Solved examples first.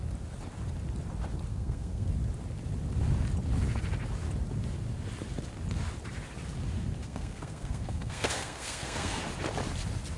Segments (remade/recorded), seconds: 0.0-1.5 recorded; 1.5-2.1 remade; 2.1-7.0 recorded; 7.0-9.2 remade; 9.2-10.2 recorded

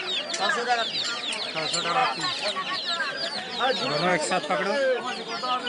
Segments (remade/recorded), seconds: 0.0-4.1 recorded; 4.1-5.0 remade; 5.0-5.7 recorded

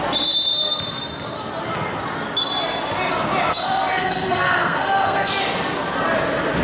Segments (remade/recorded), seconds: 0.0-3.5 recorded; 3.5-5.3 remade; 5.3-6.6 recorded

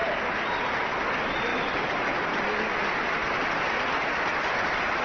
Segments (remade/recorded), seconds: 0.0-5.0 recorded

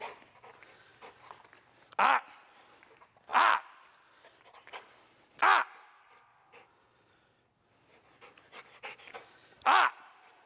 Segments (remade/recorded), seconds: 0.0-10.5 recorded

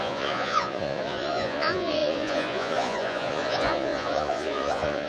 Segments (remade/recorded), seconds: 0.0-5.1 remade